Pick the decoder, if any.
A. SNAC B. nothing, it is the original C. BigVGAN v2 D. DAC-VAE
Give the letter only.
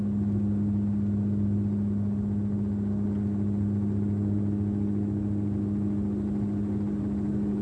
B